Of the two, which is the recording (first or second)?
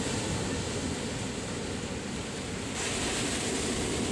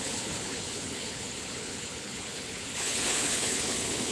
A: first